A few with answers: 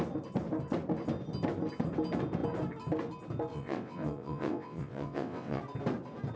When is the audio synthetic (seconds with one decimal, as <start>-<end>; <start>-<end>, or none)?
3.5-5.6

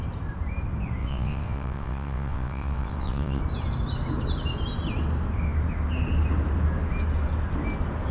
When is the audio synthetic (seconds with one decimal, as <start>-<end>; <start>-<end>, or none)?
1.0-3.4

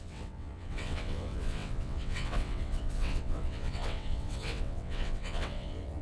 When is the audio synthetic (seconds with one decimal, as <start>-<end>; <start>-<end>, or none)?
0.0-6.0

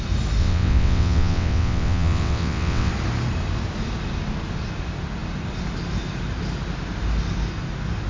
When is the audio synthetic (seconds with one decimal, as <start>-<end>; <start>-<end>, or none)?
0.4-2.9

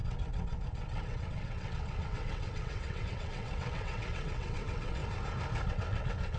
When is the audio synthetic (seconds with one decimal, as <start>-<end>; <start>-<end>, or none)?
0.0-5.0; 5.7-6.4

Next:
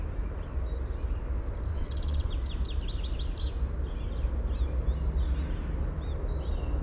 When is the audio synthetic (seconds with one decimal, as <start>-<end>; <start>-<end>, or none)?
1.7-2.3